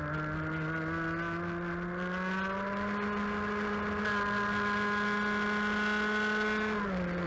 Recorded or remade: recorded